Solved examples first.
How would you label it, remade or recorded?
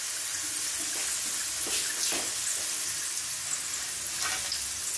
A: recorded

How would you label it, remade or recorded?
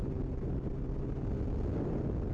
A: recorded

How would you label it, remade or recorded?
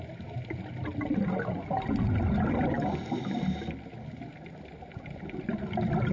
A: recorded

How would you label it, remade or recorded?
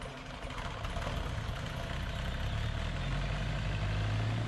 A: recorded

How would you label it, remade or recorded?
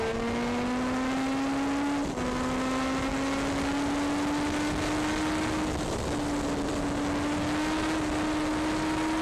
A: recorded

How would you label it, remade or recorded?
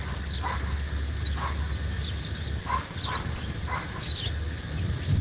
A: recorded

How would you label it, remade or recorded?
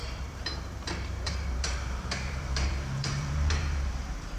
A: remade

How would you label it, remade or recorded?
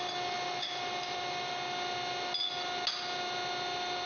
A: recorded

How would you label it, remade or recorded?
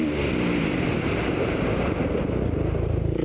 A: recorded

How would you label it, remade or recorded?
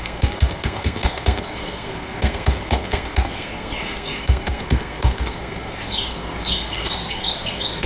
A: remade